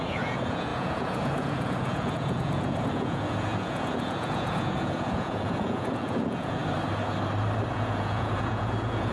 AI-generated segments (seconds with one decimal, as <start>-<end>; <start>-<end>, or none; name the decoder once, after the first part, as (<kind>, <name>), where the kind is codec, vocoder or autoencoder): 0.0-6.6 (vocoder, Vocos); 7.7-9.1

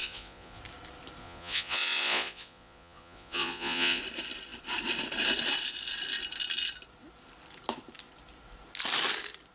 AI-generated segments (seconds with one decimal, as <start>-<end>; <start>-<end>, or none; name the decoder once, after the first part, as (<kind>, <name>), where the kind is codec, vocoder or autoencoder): 0.0-0.6 (vocoder, Vocos); 1.2-4.0

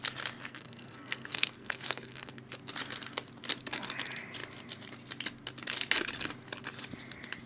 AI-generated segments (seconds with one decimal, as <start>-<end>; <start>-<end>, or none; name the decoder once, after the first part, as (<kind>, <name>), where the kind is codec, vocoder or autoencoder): 0.5-2.4 (codec, SNAC)

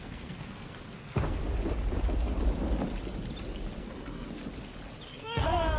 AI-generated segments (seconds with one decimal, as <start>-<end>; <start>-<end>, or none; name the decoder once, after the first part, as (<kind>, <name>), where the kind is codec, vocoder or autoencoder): 0.0-1.4 (codec, SNAC); 3.8-4.4; 5.1-5.8